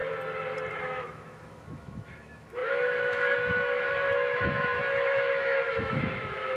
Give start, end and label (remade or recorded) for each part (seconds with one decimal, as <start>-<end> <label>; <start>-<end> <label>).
0.0-0.7 recorded; 0.7-6.6 remade